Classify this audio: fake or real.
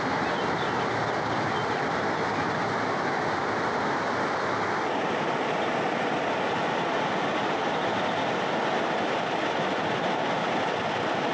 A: real